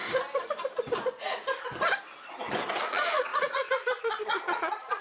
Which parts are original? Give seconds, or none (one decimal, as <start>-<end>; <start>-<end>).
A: 0.0-2.8